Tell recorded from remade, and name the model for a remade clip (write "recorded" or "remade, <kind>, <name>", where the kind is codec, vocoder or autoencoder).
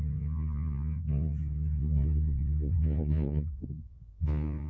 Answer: remade, vocoder, Vocos